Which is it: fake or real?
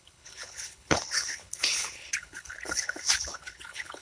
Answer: fake